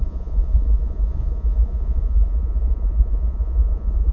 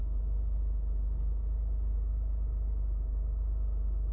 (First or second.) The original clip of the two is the second